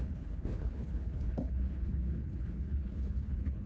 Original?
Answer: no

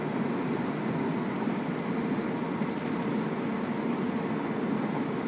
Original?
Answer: yes